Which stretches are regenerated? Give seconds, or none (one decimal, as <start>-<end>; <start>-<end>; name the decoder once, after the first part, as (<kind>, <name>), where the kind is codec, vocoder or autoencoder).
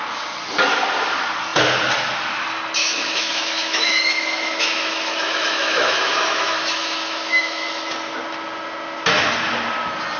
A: 2.8-7.9 (autoencoder, DAC-VAE)